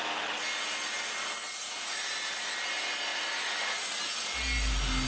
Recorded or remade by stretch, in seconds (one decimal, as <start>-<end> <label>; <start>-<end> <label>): 0.0-1.6 recorded; 1.6-2.4 remade; 2.4-3.1 recorded; 3.1-4.0 remade; 4.0-5.1 recorded